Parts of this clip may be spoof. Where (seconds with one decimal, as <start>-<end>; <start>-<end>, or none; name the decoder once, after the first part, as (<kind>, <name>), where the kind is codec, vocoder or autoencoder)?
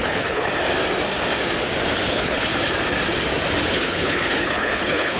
0.0-0.5 (codec, HILCodec); 2.1-2.5; 3.7-5.2